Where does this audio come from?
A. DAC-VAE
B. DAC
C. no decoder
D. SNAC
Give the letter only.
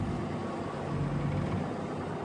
C